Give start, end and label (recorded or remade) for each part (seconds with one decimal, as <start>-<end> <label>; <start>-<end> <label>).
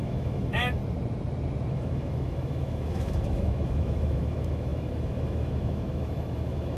0.0-0.8 remade; 0.8-1.7 recorded; 1.7-6.8 remade